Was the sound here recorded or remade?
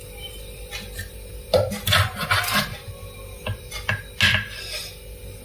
recorded